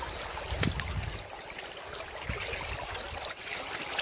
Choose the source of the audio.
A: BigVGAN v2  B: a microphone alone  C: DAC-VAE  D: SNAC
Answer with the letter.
B